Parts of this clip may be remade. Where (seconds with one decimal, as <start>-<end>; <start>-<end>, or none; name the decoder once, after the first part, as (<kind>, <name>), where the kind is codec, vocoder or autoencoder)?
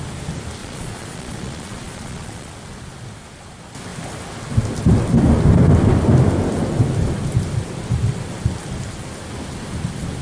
0.6-2.5 (vocoder, Vocos)